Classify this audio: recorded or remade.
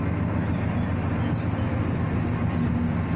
recorded